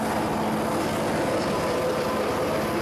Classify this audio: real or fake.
real